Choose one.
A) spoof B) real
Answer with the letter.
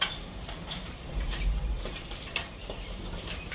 A